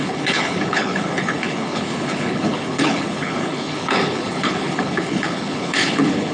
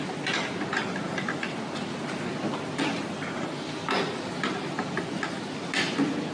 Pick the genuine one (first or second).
second